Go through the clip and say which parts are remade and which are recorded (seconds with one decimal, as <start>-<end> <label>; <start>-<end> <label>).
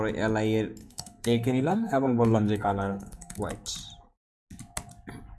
0.0-0.8 recorded; 0.8-3.4 remade; 3.4-5.4 recorded